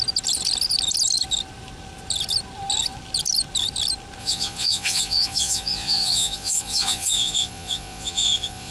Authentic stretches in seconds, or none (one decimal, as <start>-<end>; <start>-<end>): 0.0-4.2